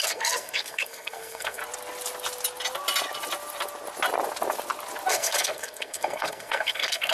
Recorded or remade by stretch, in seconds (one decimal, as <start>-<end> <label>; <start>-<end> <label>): 0.0-1.6 remade; 1.6-5.1 recorded; 5.1-7.1 remade